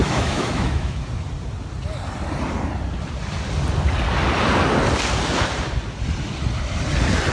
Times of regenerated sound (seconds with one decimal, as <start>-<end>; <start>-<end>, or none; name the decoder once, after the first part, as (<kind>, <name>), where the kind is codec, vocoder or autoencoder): 0.0-1.0 (autoencoder, DAC-VAE)